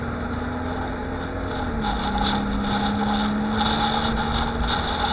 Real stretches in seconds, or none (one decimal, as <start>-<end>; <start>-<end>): 0.0-5.1